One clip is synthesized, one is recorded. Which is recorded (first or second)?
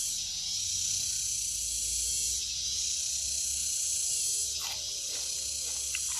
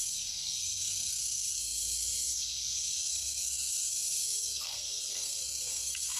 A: first